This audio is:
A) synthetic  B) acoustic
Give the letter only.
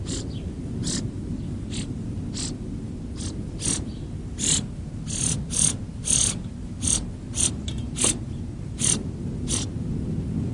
B